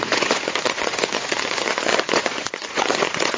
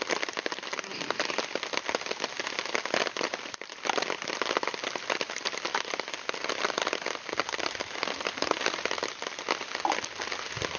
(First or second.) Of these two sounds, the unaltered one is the second